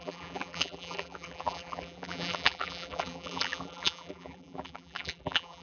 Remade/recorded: remade